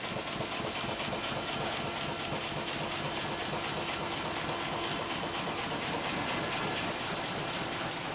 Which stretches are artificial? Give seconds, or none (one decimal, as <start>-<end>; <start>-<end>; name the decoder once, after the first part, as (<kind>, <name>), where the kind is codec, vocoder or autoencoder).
none

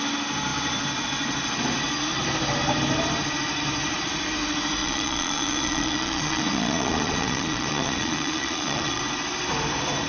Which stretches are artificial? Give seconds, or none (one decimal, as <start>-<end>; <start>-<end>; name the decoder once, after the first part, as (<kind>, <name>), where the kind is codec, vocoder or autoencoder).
4.8-9.0 (vocoder, Vocos)

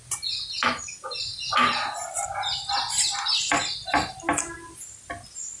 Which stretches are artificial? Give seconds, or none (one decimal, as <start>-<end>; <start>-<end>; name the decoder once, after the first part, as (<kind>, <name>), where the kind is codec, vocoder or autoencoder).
none

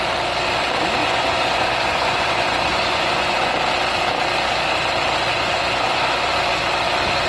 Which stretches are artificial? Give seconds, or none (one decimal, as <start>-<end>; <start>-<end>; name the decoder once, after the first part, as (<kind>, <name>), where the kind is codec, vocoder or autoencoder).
1.0-3.5 (vocoder, Vocos); 5.3-6.2

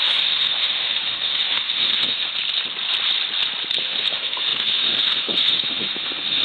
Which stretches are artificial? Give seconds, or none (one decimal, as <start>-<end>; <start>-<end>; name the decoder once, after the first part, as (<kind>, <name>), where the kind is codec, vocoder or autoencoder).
0.0-2.3 (autoencoder, DAC-VAE); 3.8-6.4